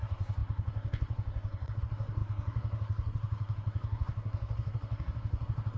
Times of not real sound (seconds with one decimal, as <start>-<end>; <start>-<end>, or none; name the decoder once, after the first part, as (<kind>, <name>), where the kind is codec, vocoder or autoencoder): 0.0-5.8 (codec, SNAC)